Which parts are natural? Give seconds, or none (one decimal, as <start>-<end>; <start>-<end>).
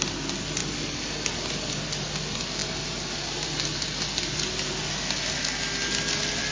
0.0-6.5